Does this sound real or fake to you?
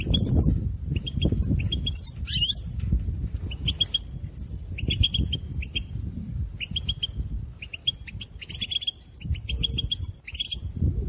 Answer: real